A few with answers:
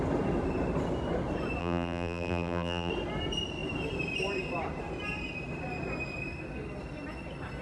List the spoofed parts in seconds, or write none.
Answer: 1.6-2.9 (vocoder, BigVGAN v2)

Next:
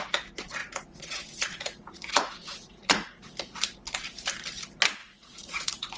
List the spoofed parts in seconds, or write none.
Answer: 0.6-3.3 (vocoder, Vocos); 5.0-6.0

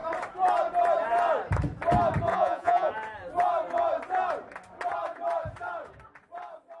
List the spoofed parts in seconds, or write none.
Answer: 2.3-2.9 (vocoder, Vocos)

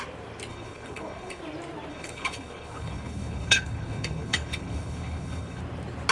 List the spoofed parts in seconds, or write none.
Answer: 0.5-1.4 (codec, HILCodec); 1.9-5.6

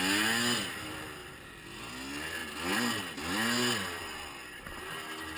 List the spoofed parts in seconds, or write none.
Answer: 1.2-1.9 (vocoder, BigVGAN v2)